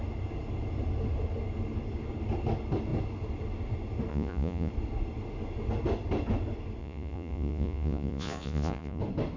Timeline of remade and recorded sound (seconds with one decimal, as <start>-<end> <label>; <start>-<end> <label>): 0.0-4.1 recorded; 4.1-4.7 remade; 4.7-6.8 recorded; 6.8-9.0 remade; 9.0-9.4 recorded